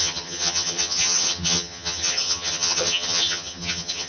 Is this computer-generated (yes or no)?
yes